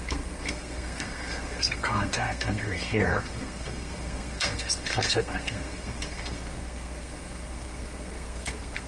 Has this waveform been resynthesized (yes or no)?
yes